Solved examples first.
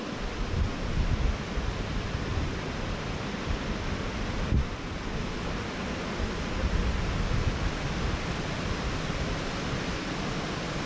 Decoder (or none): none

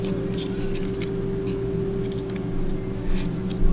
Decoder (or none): none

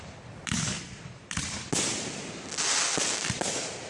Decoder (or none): none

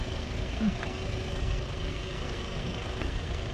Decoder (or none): codec, SNAC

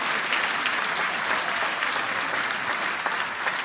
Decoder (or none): none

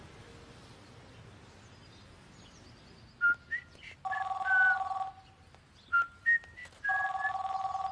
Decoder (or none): none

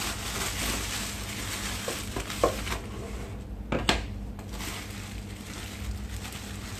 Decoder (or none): none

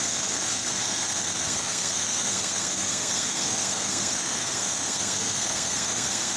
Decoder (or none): codec, SNAC